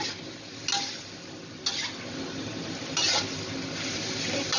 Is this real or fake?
real